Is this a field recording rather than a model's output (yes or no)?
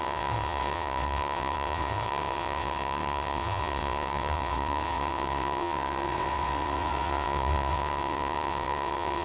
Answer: no